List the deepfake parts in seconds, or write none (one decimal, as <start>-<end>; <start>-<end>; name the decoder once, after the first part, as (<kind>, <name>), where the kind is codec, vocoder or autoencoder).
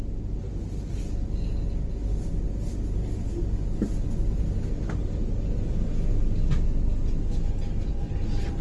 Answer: none